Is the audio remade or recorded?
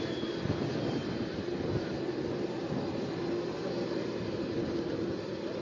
recorded